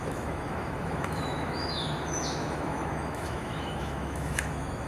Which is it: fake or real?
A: fake